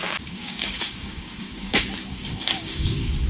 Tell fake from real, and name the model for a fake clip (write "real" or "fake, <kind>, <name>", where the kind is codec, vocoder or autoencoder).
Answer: fake, codec, DAC